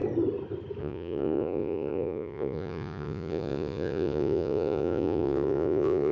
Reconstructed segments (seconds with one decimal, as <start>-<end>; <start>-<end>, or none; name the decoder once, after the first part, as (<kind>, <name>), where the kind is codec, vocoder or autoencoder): 0.8-6.1 (vocoder, Vocos)